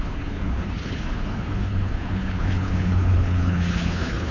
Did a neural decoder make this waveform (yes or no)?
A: yes